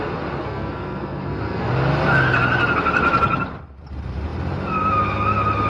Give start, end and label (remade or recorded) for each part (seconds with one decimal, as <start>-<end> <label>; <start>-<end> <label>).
0.0-0.4 recorded; 0.4-1.7 remade; 1.7-5.7 recorded